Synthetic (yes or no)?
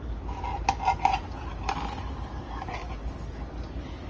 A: no